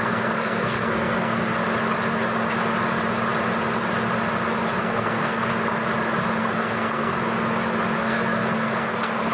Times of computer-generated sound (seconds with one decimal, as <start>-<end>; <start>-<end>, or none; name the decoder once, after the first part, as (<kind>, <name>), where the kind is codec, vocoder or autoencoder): 0.0-1.4 (codec, SNAC); 4.8-5.5; 6.4-7.2; 8.0-9.3